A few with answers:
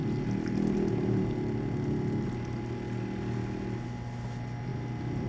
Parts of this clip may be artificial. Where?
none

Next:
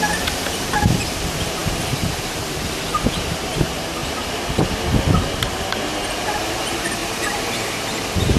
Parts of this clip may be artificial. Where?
0.0-8.4

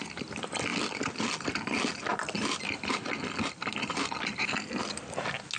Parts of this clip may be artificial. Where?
2.1-4.1

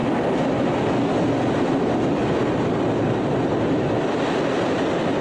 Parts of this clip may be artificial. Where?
none

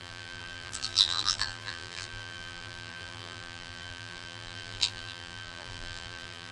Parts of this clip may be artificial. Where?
0.0-6.5

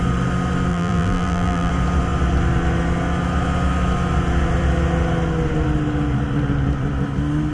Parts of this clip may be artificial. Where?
0.7-1.7

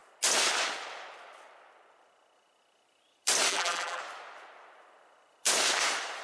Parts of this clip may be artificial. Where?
3.5-4.0